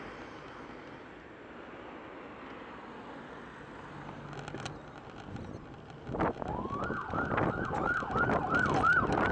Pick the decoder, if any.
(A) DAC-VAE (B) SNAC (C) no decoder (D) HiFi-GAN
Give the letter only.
C